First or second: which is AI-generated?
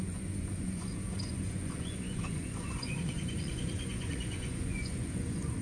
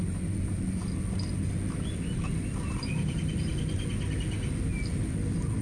first